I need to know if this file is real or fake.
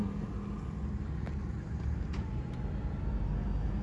real